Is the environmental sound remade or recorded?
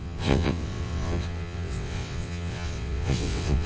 remade